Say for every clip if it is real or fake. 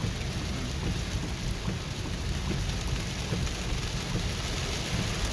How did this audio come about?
real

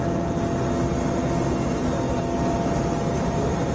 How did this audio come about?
real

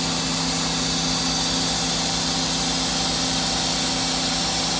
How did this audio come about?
real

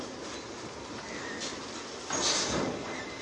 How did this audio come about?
real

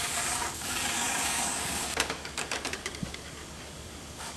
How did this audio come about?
fake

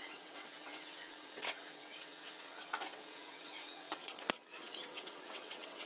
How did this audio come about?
fake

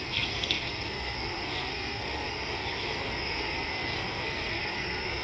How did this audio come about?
fake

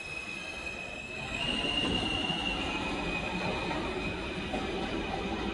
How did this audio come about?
real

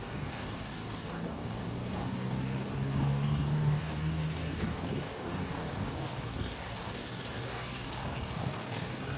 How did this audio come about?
fake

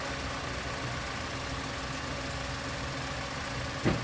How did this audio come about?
real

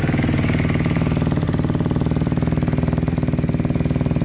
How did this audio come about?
real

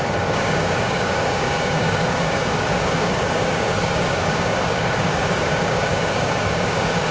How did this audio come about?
fake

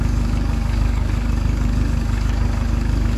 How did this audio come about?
fake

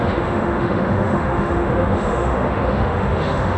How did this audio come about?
fake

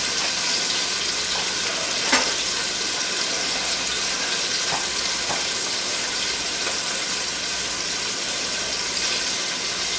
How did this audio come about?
real